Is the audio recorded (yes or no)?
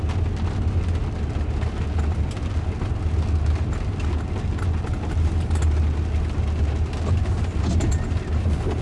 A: yes